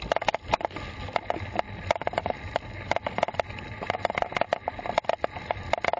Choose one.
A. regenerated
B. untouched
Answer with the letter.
B